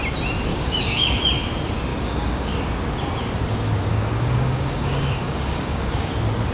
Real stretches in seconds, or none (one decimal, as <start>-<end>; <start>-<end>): 0.0-0.5; 1.2-1.9; 2.6-3.9; 6.1-6.5